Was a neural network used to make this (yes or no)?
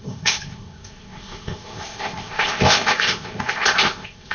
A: yes